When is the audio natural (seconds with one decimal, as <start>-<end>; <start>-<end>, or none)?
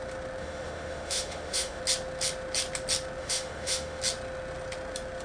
0.0-0.4; 1.8-3.2; 4.0-5.2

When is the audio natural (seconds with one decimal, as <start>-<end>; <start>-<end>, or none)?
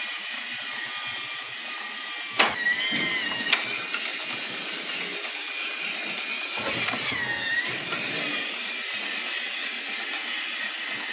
0.0-11.1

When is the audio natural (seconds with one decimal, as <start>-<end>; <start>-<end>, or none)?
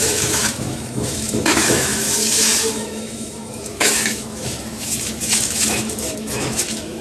none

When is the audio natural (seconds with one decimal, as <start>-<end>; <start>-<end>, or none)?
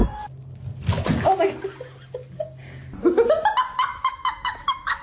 0.0-3.9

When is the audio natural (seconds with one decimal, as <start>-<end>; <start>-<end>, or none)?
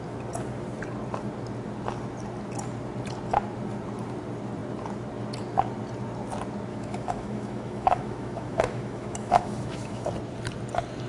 0.0-6.7; 10.1-11.1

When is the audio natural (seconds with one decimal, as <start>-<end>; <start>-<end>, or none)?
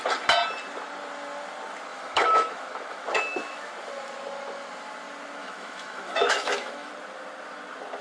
0.0-1.9; 3.7-5.4; 6.9-8.0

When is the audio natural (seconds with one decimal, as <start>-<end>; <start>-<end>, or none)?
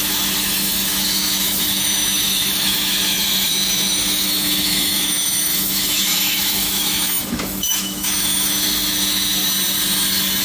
9.4-10.4